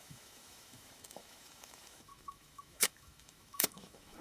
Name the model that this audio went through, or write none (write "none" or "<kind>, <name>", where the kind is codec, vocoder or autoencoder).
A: autoencoder, DAC-VAE